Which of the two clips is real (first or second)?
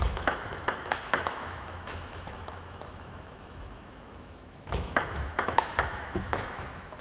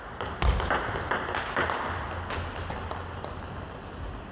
second